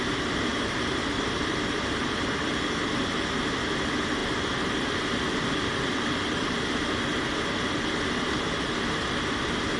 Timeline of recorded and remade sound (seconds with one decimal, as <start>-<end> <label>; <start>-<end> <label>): 0.0-0.5 recorded; 0.5-3.0 remade; 3.0-9.8 recorded